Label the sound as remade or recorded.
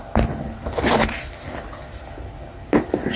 recorded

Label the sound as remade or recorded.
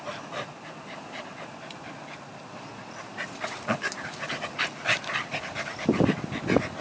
recorded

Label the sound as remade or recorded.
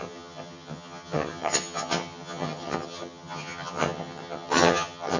remade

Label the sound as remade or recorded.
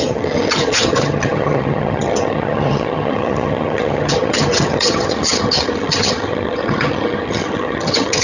remade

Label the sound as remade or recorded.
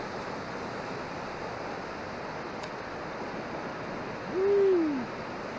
recorded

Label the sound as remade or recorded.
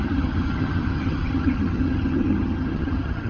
remade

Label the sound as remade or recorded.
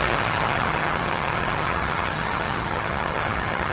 remade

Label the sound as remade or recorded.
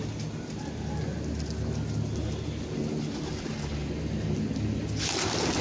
recorded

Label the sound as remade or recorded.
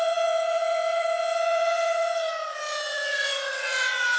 remade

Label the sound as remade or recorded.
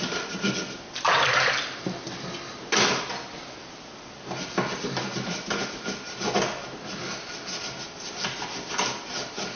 recorded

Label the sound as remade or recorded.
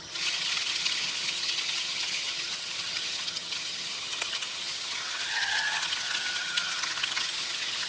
remade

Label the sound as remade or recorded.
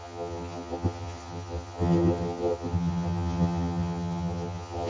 remade